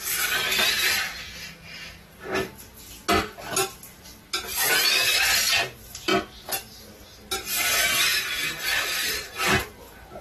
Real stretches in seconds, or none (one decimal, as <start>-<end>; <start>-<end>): 0.0-10.2